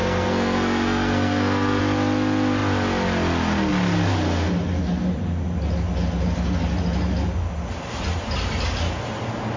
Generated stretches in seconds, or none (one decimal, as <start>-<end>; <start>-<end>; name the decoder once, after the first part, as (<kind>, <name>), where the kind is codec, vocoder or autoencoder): 0.0-1.8 (codec, SNAC)